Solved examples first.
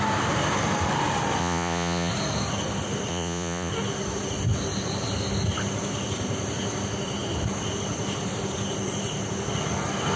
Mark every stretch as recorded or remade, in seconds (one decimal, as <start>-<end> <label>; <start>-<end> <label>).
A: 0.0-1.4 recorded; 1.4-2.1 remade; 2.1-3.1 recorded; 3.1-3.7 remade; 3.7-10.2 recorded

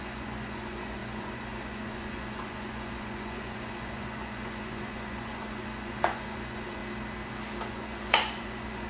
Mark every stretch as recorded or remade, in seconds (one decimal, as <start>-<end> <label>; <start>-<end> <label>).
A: 0.0-6.8 remade; 6.8-7.7 recorded; 7.7-8.9 remade

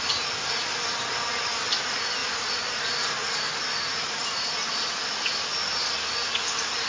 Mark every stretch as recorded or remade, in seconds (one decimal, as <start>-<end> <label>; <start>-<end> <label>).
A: 0.0-3.9 recorded; 3.9-4.5 remade; 4.5-6.9 recorded

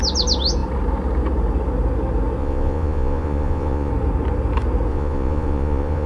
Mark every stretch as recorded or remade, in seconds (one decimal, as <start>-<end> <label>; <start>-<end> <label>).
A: 0.0-2.4 recorded; 2.4-3.9 remade; 3.9-4.9 recorded; 4.9-6.1 remade

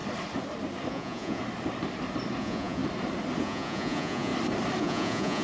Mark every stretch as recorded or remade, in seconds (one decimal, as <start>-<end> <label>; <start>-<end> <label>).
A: 0.0-0.9 recorded; 0.9-1.4 remade; 1.4-2.4 recorded; 2.4-2.8 remade; 2.8-3.4 recorded; 3.4-4.3 remade; 4.3-4.8 recorded; 4.8-5.4 remade

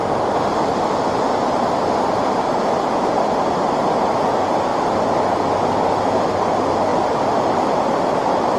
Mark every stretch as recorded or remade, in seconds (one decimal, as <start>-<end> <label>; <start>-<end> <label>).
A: 0.0-8.6 recorded

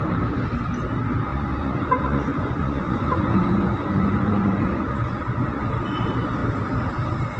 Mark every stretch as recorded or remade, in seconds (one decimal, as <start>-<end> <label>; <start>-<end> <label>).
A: 0.0-1.3 recorded; 1.3-5.7 remade; 5.7-7.4 recorded

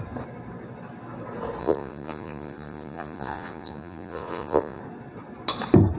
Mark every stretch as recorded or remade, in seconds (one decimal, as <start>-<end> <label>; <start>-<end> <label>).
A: 0.0-1.6 recorded; 1.6-4.8 remade; 4.8-6.0 recorded